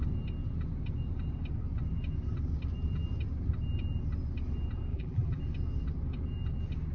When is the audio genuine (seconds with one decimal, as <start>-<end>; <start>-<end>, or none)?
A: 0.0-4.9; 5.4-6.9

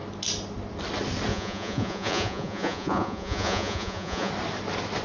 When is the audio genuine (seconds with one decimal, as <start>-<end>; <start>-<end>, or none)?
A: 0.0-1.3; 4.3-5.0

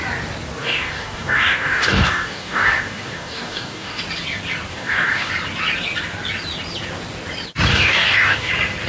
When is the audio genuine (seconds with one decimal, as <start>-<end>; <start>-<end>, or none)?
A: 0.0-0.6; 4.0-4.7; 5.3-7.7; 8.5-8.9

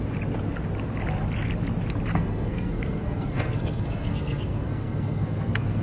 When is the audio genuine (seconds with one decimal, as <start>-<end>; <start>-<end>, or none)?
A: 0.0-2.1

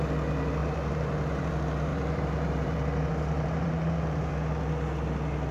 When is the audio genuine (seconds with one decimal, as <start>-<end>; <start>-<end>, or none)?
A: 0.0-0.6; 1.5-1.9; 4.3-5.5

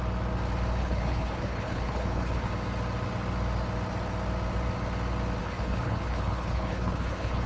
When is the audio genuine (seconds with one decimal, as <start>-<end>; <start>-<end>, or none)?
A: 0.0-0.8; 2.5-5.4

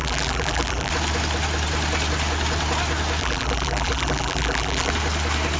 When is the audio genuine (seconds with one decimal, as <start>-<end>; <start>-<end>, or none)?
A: 0.9-3.2; 4.9-5.6

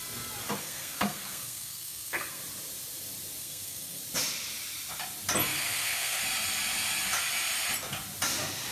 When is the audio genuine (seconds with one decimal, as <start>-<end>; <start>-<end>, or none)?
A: 0.0-0.6; 2.4-3.4; 4.0-5.5; 6.2-8.7